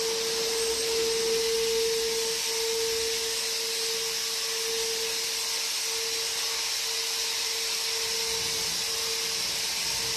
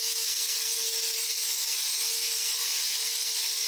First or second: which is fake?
second